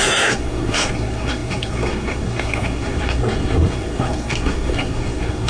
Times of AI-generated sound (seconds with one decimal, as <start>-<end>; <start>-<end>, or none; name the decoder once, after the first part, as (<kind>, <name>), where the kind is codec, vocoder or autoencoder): 0.0-5.5 (codec, SNAC)